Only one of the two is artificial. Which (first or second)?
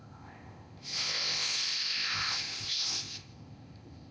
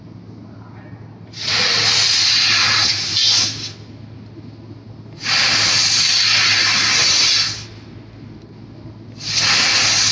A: first